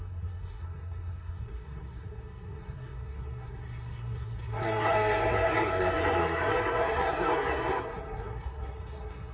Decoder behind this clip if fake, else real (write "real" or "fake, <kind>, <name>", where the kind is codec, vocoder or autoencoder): fake, codec, SNAC